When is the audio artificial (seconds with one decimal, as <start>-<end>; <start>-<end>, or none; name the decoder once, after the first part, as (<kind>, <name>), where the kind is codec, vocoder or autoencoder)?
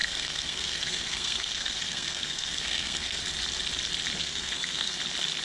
0.0-3.2 (codec, SNAC); 4.2-5.0